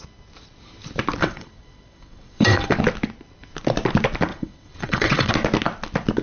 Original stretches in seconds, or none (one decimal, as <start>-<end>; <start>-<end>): 0.0-1.2; 2.8-4.3; 5.3-6.2